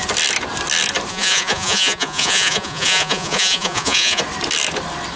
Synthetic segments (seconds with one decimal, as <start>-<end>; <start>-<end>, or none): 1.1-4.2